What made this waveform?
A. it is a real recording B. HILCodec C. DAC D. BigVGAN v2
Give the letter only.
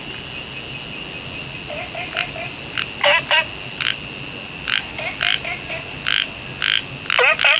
A